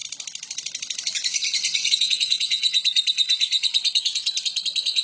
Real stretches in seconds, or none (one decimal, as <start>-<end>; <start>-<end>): 0.0-1.9; 2.6-5.0